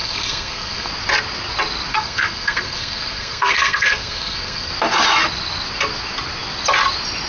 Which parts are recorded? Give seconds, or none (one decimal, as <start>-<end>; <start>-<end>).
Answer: 0.9-1.9; 4.7-7.3